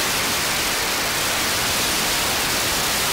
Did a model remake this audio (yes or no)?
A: no